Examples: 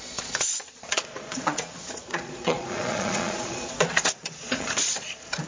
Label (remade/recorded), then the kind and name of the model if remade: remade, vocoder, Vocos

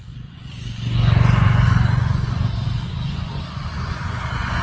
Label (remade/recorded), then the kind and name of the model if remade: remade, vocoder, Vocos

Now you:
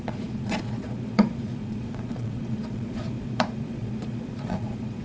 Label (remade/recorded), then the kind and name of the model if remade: remade, vocoder, Vocos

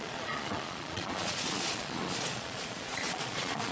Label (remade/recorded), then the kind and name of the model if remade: remade, vocoder, Vocos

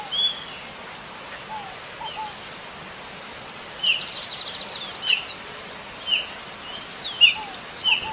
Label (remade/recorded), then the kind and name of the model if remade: recorded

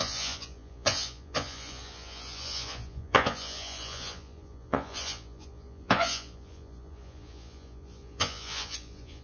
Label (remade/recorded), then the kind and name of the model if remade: remade, vocoder, Vocos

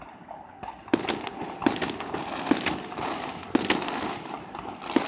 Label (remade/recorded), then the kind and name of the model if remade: recorded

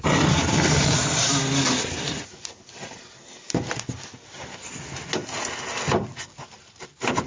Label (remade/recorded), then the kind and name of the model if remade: recorded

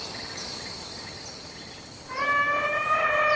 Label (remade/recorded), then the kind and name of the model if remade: recorded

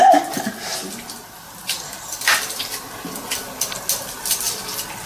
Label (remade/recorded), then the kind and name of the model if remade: recorded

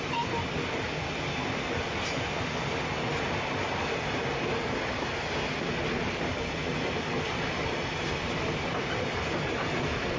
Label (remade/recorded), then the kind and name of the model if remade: recorded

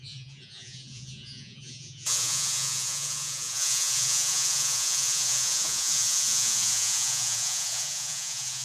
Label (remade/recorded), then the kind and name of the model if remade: remade, vocoder, Vocos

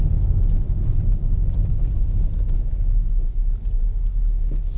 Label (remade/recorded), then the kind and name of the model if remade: recorded